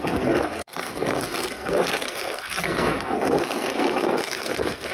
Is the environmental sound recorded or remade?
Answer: remade